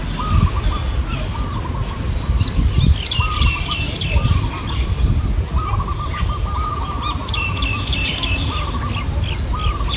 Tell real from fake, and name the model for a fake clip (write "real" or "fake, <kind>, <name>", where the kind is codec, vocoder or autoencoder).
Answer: real